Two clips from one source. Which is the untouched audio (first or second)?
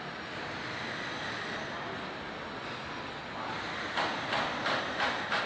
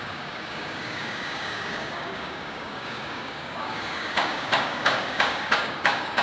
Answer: first